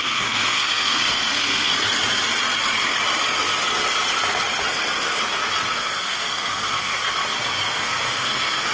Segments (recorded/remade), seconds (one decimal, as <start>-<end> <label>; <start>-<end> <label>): 0.0-1.7 remade; 1.7-5.7 recorded; 5.7-7.0 remade; 7.0-7.8 recorded; 7.8-8.7 remade